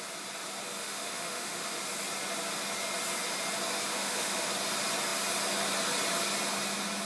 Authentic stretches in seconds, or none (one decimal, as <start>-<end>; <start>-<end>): 0.0-0.8; 1.8-3.9; 4.5-7.0